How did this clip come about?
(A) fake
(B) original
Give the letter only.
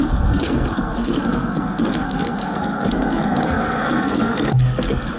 A